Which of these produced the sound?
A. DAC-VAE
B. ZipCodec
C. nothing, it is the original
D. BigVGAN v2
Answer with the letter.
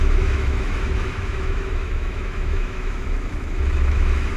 A